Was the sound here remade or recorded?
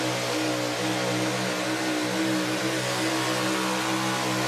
recorded